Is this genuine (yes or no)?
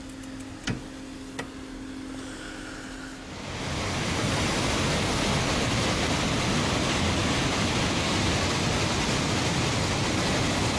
yes